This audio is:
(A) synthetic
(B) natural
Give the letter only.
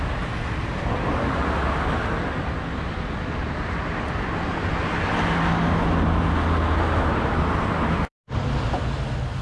B